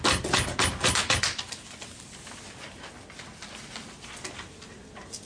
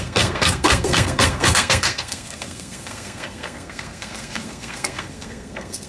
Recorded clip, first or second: first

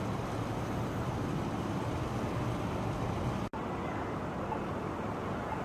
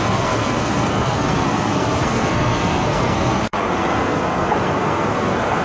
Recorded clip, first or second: first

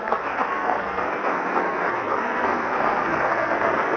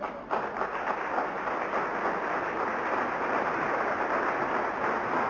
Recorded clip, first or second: second